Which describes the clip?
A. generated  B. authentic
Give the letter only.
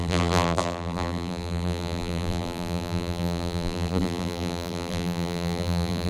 A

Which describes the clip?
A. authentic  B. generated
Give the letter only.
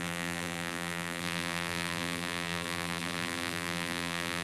B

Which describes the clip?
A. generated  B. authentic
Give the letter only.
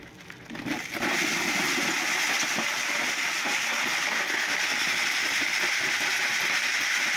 B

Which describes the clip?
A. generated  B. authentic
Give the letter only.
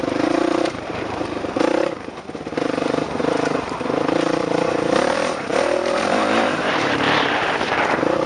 A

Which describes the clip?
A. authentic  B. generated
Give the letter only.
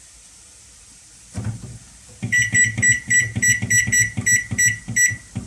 A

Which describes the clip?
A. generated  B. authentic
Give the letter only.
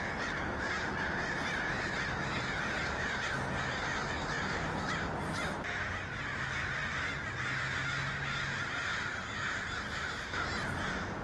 B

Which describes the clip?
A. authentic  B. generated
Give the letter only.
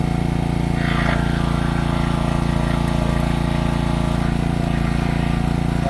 A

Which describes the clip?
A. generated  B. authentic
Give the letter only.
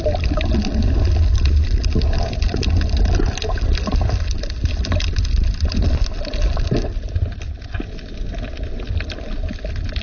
B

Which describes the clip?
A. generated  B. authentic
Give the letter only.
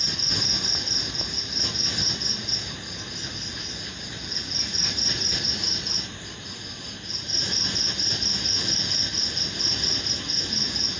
B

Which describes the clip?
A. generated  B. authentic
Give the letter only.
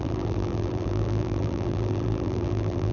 A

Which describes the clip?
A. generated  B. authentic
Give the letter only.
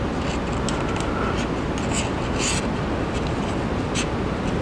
B